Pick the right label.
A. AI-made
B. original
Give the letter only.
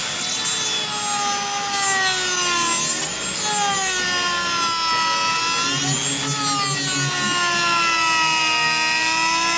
B